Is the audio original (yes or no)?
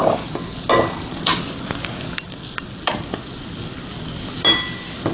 yes